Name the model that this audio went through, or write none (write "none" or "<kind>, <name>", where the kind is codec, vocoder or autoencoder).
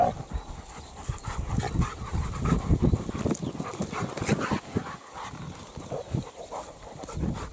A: none